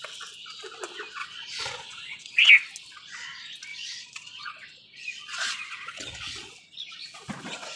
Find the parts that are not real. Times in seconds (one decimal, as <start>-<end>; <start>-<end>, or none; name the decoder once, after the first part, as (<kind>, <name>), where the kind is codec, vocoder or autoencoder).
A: 1.2-2.5 (vocoder, Vocos); 3.7-6.5